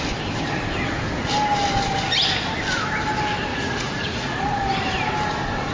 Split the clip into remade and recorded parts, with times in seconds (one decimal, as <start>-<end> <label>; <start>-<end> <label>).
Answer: 0.0-3.5 recorded; 3.5-4.6 remade; 4.6-5.7 recorded